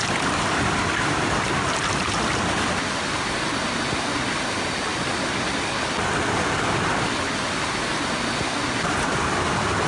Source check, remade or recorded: recorded